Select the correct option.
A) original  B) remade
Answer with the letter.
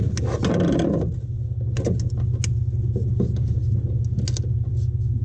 A